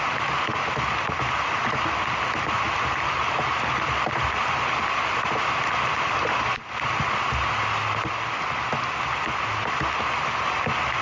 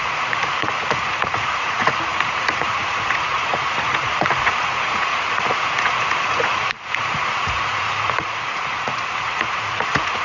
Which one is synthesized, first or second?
second